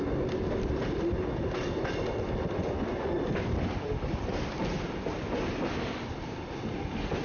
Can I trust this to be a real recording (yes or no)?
yes